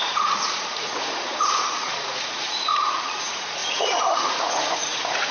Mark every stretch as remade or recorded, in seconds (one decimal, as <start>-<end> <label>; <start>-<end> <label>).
0.0-5.3 remade